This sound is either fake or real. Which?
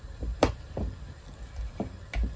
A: fake